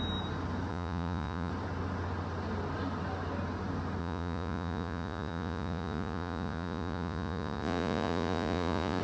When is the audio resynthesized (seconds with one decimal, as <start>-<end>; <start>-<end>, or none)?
0.7-1.5; 4.0-9.0